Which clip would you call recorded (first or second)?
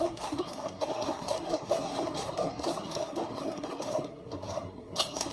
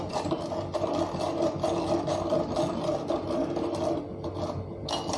second